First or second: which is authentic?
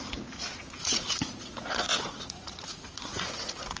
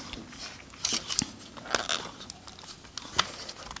second